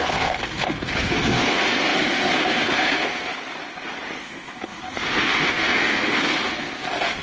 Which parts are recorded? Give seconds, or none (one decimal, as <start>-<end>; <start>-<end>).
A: 3.3-4.2